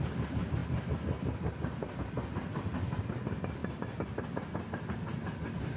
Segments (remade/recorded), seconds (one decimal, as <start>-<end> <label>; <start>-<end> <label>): 0.0-5.8 recorded